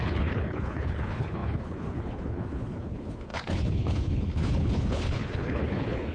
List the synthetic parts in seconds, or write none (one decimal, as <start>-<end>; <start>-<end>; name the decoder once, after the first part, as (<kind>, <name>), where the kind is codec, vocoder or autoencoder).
0.0-6.1 (codec, HILCodec)